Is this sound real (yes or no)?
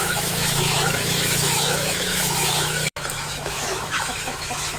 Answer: no